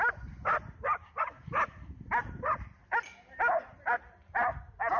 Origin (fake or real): real